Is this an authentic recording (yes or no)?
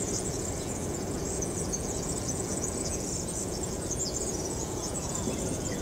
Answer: no